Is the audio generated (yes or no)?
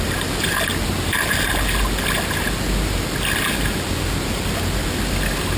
no